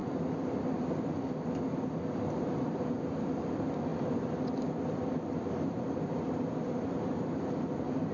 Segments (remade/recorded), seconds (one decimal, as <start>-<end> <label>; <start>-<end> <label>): 0.0-3.9 recorded; 3.9-4.7 remade; 4.7-8.1 recorded